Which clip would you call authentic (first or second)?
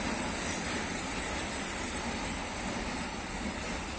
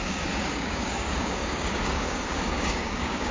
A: first